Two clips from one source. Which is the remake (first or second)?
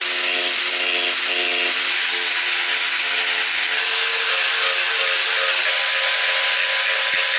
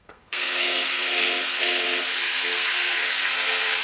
second